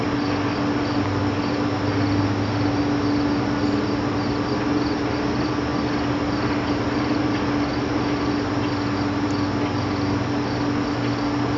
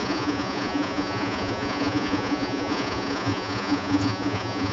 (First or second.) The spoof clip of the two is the second